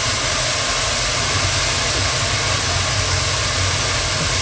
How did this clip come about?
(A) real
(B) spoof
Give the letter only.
A